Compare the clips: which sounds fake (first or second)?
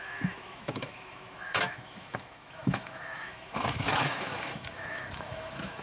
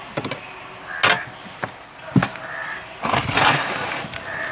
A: first